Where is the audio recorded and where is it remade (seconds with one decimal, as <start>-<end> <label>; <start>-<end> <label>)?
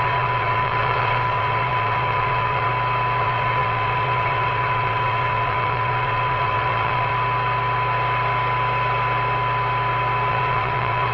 0.0-2.7 remade; 2.7-3.2 recorded; 3.2-7.1 remade; 7.1-10.3 recorded; 10.3-11.1 remade